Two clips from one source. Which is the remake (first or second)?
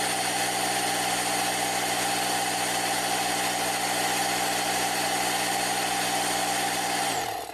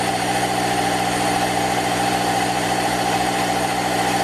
second